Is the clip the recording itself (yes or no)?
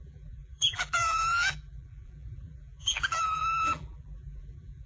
no